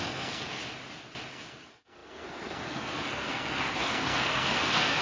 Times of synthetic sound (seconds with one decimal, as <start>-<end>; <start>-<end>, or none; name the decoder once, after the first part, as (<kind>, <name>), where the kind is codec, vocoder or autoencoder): 0.0-0.6 (codec, SNAC); 1.3-5.0